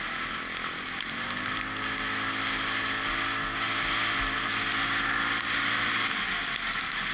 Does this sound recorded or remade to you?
recorded